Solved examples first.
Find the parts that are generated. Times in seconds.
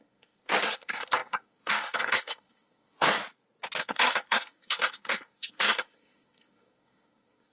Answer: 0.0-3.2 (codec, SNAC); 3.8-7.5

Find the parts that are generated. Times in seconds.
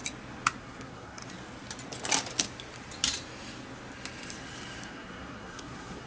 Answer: 0.6-1.2 (codec, SNAC); 4.9-6.1